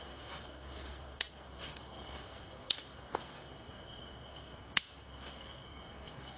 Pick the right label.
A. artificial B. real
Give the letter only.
A